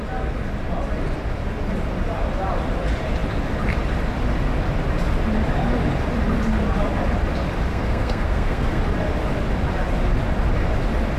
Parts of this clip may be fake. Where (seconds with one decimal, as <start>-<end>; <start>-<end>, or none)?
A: 7.7-8.8

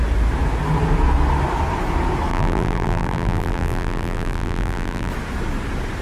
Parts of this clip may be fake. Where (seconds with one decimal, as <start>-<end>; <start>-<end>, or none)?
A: 2.3-5.1

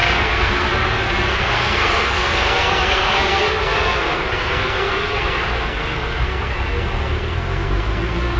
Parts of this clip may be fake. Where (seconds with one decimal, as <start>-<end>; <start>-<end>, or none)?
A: 0.0-8.4